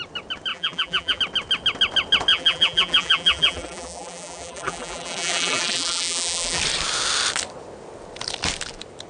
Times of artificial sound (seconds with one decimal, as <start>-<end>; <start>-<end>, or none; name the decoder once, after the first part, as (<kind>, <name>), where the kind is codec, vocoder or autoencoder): 0.5-1.2 (vocoder, BigVGAN v2); 2.3-6.6